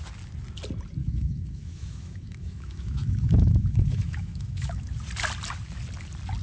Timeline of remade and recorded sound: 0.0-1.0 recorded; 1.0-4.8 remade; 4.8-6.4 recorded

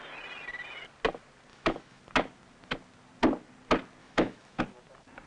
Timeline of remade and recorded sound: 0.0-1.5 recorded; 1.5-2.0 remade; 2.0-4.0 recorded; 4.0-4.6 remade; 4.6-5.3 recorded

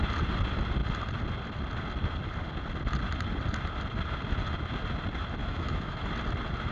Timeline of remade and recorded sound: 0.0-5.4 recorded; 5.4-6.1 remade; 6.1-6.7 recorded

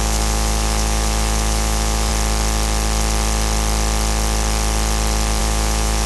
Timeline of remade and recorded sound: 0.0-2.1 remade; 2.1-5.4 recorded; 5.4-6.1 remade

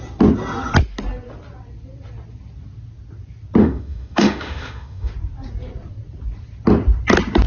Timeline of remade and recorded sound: 0.0-3.6 recorded; 3.6-5.1 remade; 5.1-7.5 recorded

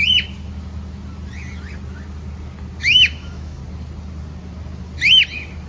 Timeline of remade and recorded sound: 0.0-2.8 recorded; 2.8-3.6 remade; 3.6-5.7 recorded

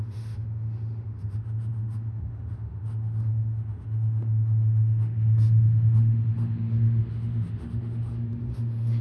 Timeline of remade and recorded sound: 0.0-9.0 remade

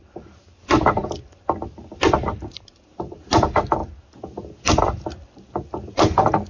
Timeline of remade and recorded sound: 0.0-6.5 recorded